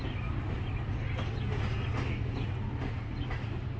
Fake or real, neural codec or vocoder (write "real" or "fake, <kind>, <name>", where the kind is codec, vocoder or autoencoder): real